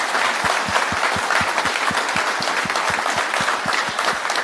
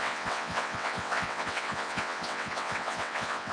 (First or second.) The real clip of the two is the first